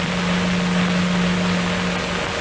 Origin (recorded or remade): recorded